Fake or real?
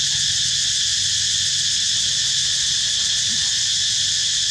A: real